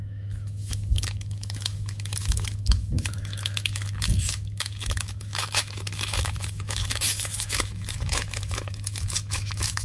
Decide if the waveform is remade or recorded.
remade